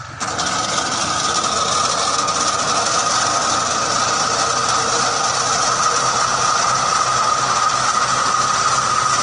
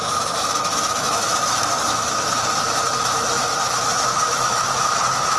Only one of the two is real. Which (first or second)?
first